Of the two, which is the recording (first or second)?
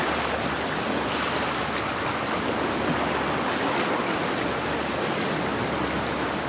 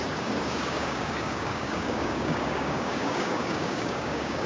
first